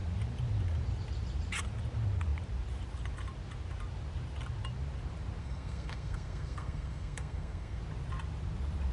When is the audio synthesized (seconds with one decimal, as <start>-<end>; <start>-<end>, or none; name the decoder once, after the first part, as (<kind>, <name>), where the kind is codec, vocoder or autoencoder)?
5.4-7.8 (codec, SNAC)